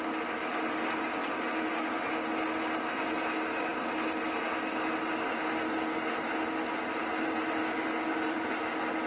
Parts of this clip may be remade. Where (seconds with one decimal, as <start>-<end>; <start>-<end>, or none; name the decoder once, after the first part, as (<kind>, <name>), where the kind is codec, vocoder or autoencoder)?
none